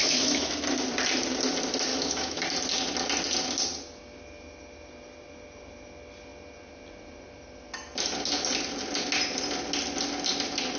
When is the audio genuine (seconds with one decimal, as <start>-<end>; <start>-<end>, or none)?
0.5-1.9; 2.4-10.8